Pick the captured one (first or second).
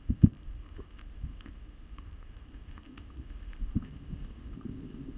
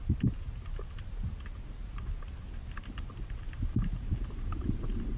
second